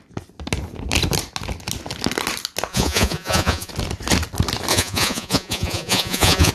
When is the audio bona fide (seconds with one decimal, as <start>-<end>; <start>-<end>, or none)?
0.0-2.7; 3.7-4.7